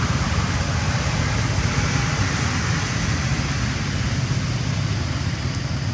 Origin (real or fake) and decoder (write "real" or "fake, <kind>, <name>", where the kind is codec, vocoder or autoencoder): real